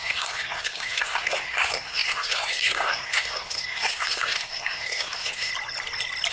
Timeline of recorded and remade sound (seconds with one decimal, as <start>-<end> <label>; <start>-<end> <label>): 0.0-5.5 remade; 5.5-6.3 recorded